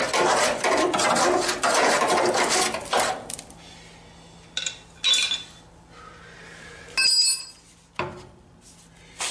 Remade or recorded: recorded